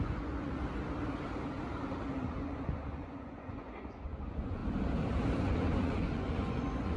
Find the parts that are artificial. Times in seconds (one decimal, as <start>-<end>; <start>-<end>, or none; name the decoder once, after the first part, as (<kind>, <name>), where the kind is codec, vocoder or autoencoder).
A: 0.0-0.5 (vocoder, Vocos); 2.2-4.6; 5.4-7.0